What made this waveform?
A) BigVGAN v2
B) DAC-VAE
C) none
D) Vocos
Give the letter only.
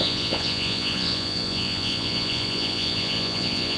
D